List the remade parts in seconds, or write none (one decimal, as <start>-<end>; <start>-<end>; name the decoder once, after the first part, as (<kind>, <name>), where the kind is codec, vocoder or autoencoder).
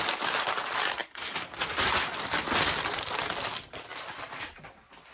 none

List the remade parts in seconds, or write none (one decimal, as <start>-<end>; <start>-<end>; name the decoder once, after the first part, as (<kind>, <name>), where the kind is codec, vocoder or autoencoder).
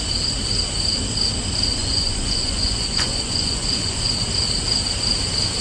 1.8-4.0 (vocoder, Vocos)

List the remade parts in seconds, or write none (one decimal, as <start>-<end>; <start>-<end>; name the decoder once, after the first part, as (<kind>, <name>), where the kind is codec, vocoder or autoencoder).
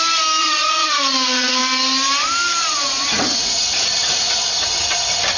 0.4-1.6 (vocoder, Vocos); 2.6-4.4